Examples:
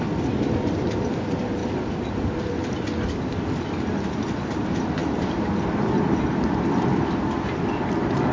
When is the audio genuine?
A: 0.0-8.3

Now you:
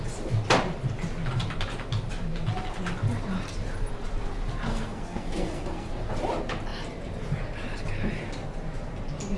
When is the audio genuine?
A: 0.0-4.7; 5.9-9.4

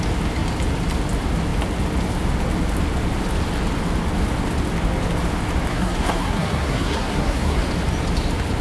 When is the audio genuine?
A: 0.0-5.7; 7.6-8.6

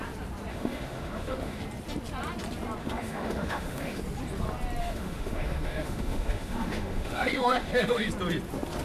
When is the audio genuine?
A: 0.0-0.5; 1.6-2.8; 4.0-4.8; 8.1-8.8

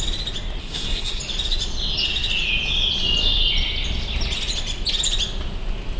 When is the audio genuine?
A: 0.0-0.6; 1.2-6.0

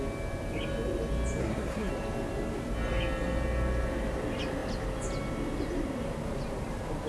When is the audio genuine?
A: 0.0-1.4; 1.9-7.1